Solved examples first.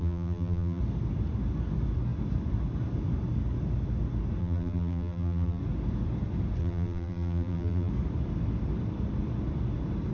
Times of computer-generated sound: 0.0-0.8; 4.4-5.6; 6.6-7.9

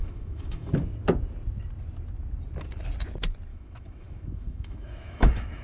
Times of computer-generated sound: 0.0-0.7; 3.5-5.6